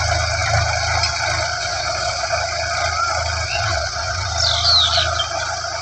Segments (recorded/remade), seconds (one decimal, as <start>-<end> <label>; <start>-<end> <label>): 0.0-1.6 recorded; 1.6-2.3 remade; 2.3-3.5 recorded; 3.5-4.3 remade; 4.3-5.8 recorded